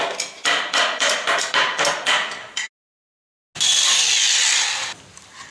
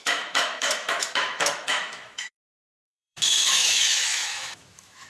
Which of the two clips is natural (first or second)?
first